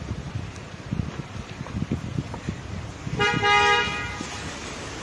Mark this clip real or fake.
real